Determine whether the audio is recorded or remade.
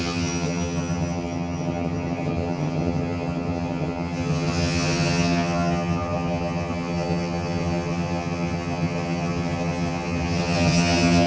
remade